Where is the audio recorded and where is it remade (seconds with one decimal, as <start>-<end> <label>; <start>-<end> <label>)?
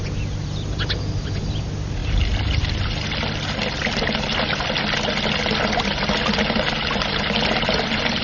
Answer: 0.0-8.2 recorded